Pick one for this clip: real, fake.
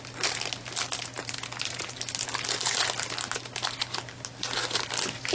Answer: real